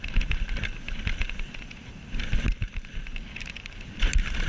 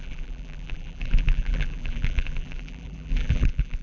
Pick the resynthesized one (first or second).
second